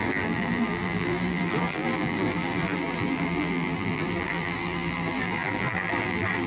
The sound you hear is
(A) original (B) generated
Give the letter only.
B